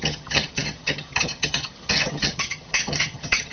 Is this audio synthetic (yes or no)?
yes